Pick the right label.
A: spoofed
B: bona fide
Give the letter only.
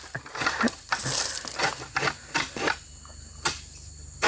B